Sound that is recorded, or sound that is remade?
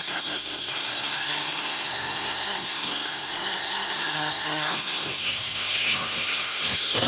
remade